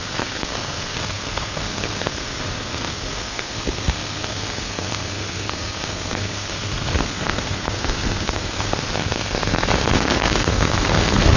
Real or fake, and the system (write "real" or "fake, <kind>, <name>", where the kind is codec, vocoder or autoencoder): fake, codec, SNAC